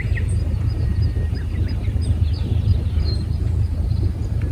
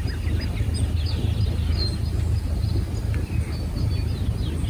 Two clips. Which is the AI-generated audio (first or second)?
first